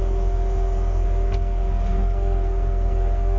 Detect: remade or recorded remade